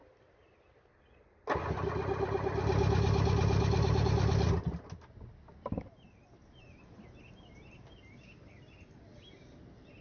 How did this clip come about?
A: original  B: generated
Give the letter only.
A